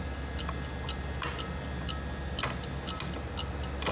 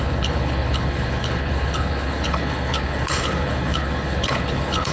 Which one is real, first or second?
first